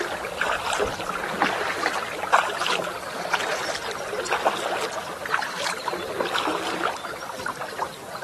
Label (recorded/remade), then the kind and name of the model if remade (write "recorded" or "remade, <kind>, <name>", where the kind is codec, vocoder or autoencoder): recorded